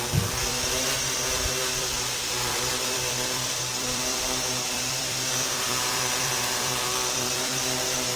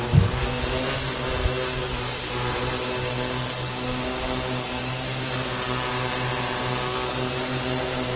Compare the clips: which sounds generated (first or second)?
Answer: first